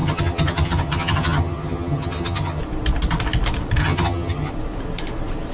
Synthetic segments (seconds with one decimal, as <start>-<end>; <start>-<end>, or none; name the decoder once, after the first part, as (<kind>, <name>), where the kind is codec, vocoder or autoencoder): 0.0-2.6 (vocoder, HiFi-GAN); 3.8-4.5